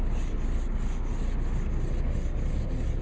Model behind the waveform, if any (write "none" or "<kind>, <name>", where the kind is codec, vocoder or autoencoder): none